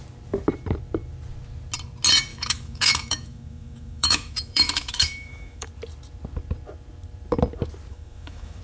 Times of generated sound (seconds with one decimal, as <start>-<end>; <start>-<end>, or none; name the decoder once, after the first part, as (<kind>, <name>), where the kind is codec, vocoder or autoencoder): 2.3-5.7 (autoencoder, DAC-VAE); 7.9-8.6